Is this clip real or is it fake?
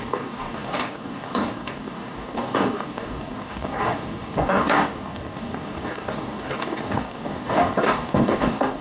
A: fake